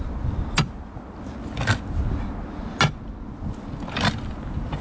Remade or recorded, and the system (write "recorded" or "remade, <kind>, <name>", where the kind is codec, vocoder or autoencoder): recorded